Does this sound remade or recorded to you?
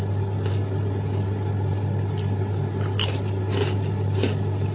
recorded